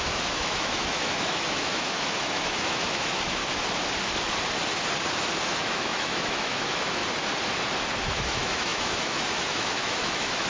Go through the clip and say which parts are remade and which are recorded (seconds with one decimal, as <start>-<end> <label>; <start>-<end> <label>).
0.0-3.4 remade; 3.4-5.4 recorded; 5.4-7.0 remade; 7.0-8.0 recorded; 8.0-10.5 remade